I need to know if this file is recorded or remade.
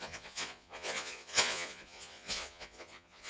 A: remade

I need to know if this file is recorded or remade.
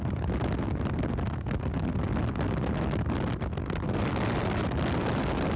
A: recorded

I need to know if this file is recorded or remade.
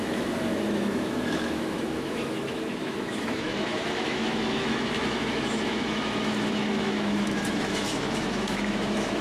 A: remade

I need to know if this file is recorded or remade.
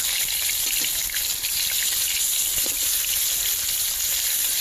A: recorded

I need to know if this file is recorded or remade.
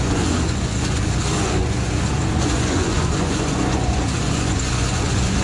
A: remade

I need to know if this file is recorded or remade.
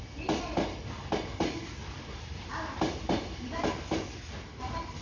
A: recorded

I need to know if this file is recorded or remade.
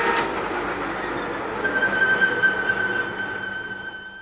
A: recorded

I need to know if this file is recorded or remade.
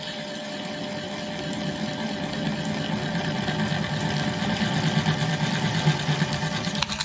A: recorded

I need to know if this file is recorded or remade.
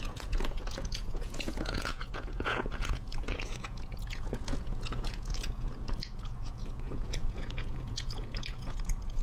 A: remade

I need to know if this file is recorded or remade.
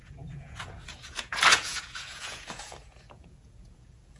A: remade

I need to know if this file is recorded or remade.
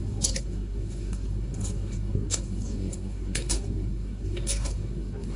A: remade